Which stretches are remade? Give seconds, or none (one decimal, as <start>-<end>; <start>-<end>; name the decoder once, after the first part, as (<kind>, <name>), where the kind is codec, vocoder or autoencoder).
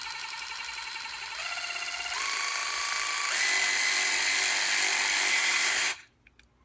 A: 5.3-6.1 (codec, SNAC)